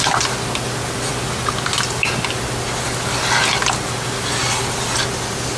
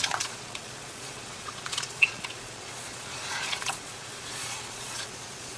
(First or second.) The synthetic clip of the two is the second